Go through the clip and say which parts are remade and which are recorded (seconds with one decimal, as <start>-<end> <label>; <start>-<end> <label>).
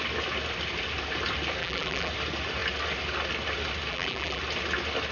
0.0-1.6 recorded; 1.6-2.1 remade; 2.1-3.9 recorded; 3.9-4.4 remade; 4.4-5.1 recorded